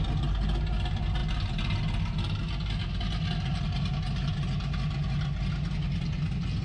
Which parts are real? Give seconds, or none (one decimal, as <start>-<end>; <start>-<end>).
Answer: 0.0-6.6